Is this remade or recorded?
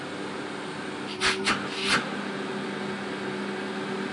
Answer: recorded